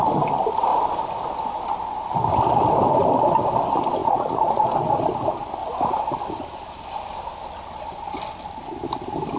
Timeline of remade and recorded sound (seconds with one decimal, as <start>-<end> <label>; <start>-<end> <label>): 0.0-4.0 recorded; 4.0-4.6 remade; 4.6-9.4 recorded